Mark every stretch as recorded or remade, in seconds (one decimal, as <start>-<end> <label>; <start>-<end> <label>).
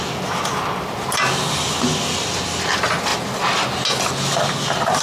0.0-5.0 recorded